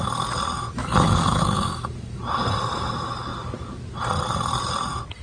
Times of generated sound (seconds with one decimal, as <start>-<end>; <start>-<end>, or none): 0.8-2.2